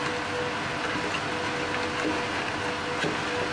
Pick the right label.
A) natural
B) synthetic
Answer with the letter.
A